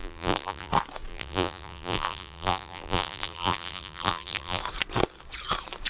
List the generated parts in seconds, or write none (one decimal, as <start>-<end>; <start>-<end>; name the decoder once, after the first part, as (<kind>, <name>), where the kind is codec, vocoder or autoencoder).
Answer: 0.0-0.7 (vocoder, BigVGAN v2); 1.1-4.6